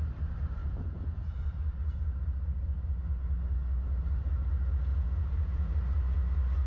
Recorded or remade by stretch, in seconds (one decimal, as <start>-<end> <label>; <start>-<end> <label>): 0.0-0.6 recorded; 0.6-1.3 remade; 1.3-4.9 recorded; 4.9-5.7 remade; 5.7-6.7 recorded